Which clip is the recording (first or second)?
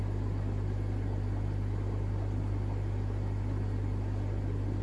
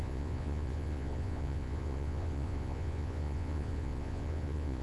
first